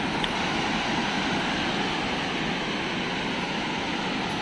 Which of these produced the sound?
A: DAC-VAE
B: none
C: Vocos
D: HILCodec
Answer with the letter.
B